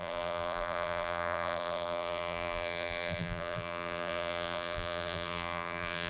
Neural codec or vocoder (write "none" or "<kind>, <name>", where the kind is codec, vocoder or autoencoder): vocoder, BigVGAN v2